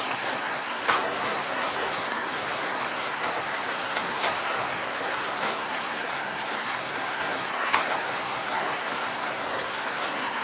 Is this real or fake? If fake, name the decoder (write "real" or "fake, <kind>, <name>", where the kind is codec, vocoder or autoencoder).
fake, codec, SNAC